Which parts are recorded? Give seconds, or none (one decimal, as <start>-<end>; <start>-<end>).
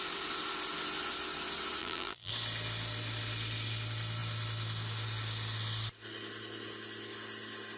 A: 0.0-1.8; 2.3-7.8